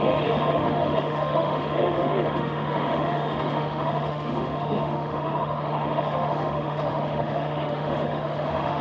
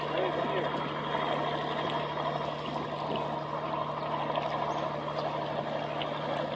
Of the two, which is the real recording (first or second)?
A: second